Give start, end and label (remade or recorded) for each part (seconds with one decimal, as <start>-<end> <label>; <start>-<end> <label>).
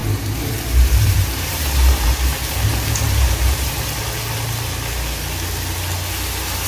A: 0.0-3.7 remade; 3.7-6.7 recorded